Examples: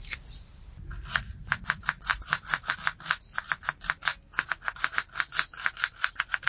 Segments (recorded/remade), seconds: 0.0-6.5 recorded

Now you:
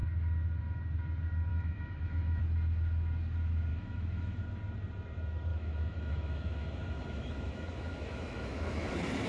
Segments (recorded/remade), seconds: 0.0-1.5 recorded; 1.5-2.4 remade; 2.4-3.7 recorded; 3.7-4.4 remade; 4.4-5.5 recorded; 5.5-8.9 remade; 8.9-9.3 recorded

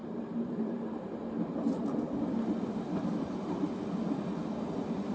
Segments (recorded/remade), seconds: 0.0-1.1 remade; 1.1-5.1 recorded

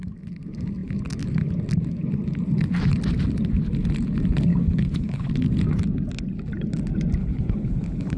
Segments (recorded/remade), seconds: 0.0-4.5 recorded; 4.5-5.3 remade; 5.3-7.2 recorded; 7.2-8.2 remade

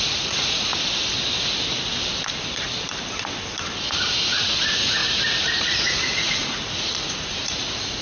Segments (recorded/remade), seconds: 0.0-0.7 remade; 0.7-4.3 recorded; 4.3-5.0 remade; 5.0-5.6 recorded; 5.6-8.0 remade

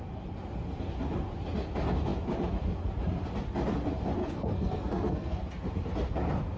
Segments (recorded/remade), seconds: 0.0-4.2 recorded; 4.2-5.4 remade; 5.4-6.6 recorded